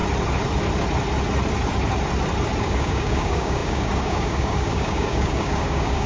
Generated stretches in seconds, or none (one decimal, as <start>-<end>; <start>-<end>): 2.6-6.1